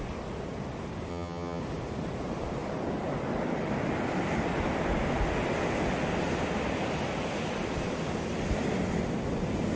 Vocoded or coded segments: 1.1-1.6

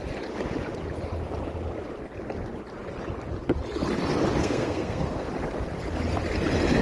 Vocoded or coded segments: 4.4-5.3

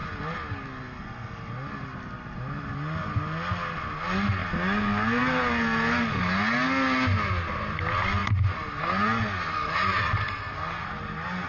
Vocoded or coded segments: none

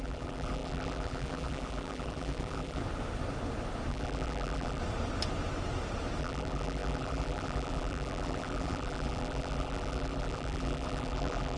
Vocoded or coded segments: 0.0-2.8; 3.9-4.8; 6.2-11.6

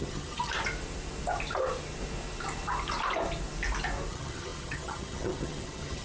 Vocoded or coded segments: 0.0-0.5; 4.1-6.0

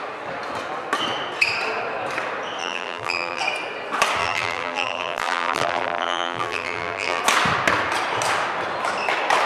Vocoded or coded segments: 2.6-3.4; 4.2-7.2